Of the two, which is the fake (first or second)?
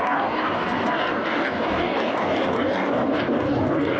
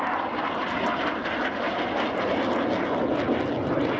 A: first